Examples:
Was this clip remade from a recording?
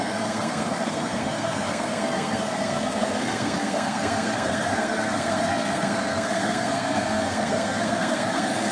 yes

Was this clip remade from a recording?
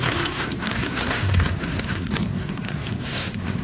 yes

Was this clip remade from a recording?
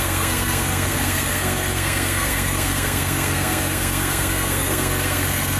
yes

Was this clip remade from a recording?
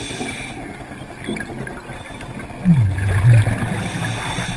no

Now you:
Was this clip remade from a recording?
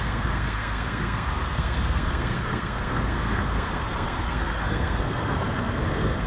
yes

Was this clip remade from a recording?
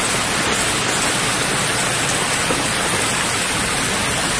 no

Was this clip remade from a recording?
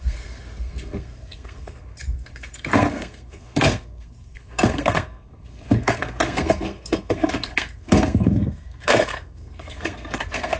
yes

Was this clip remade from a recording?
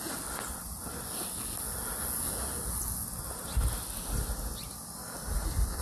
no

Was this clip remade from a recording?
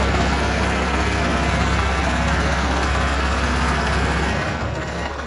yes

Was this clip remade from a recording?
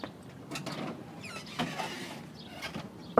no